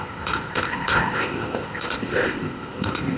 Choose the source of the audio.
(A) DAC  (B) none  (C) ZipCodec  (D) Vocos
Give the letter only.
C